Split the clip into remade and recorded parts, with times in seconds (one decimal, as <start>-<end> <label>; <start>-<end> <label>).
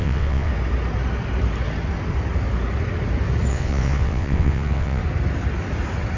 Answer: 0.0-0.5 remade; 0.5-3.5 recorded; 3.5-5.0 remade; 5.0-6.2 recorded